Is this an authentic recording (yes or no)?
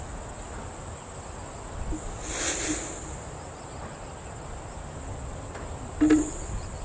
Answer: yes